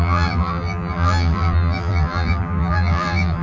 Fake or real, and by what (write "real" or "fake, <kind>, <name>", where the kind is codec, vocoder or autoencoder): fake, vocoder, BigVGAN v2